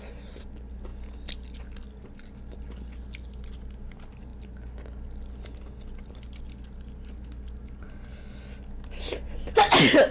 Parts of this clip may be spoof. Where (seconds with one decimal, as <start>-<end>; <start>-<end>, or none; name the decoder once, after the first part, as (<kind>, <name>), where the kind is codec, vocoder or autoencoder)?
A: none